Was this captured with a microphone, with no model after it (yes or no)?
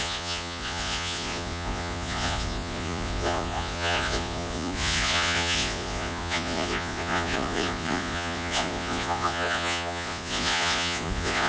no